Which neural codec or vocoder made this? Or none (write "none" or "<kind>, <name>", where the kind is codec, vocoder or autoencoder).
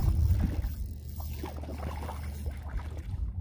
none